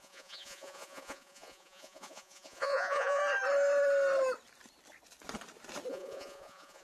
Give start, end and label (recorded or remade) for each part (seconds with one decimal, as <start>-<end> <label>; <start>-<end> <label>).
0.0-3.2 remade; 3.2-5.9 recorded; 5.9-6.8 remade